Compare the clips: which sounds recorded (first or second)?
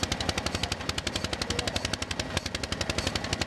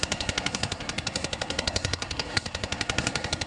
first